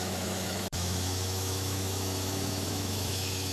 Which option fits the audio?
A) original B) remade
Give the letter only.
B